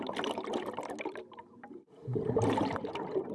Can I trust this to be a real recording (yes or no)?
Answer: yes